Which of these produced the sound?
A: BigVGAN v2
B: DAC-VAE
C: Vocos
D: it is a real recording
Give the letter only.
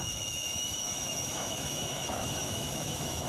B